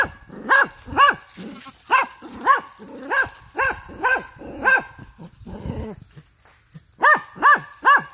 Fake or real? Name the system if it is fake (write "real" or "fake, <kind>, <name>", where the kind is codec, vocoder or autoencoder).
real